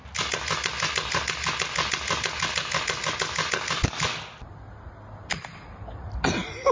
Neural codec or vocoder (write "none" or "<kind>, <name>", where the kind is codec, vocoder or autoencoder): none